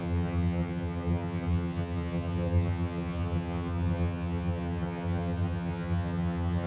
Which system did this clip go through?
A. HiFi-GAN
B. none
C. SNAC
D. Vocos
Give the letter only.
A